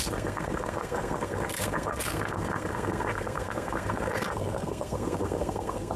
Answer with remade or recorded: remade